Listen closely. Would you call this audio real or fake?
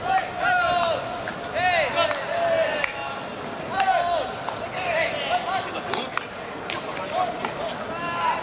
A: real